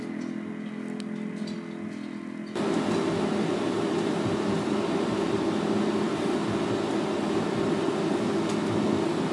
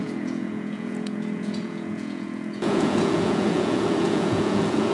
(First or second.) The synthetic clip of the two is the second